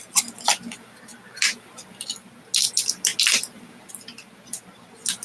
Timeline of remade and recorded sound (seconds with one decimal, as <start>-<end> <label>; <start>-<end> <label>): 0.0-5.2 recorded